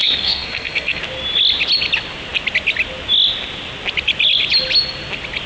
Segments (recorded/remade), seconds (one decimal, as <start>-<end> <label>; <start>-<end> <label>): 0.0-1.0 remade; 1.0-5.5 recorded

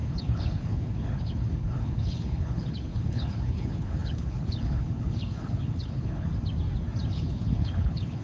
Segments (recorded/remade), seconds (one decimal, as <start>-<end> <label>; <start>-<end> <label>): 0.0-6.3 remade; 6.3-7.1 recorded; 7.1-8.2 remade